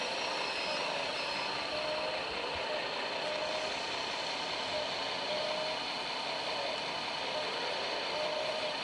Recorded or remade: recorded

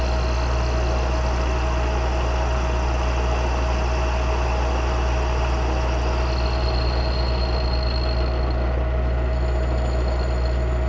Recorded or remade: recorded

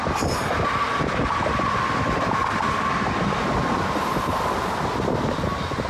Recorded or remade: recorded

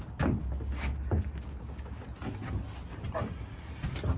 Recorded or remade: recorded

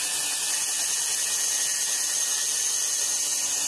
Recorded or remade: recorded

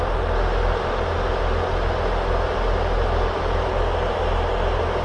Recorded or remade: recorded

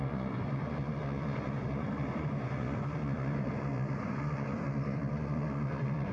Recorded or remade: remade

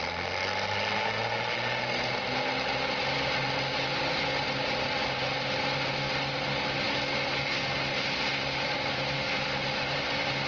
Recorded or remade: recorded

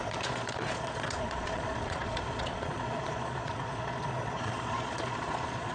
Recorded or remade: remade